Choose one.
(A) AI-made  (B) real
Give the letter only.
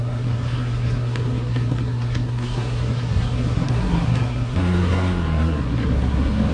A